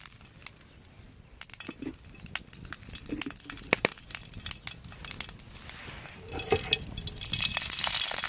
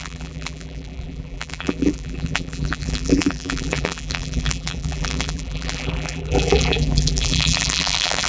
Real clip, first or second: first